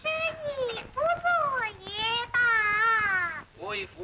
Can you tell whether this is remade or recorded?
recorded